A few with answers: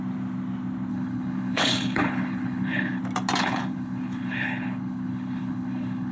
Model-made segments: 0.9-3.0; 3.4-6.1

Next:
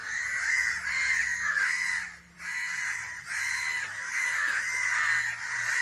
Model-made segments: 0.0-0.9; 1.3-3.4

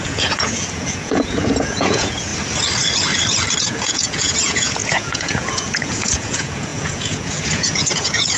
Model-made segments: 0.0-2.3; 3.6-8.4

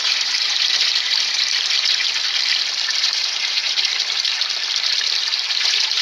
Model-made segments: 0.0-2.0; 3.0-3.9; 5.6-6.0

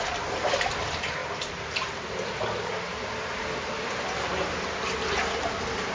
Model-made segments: none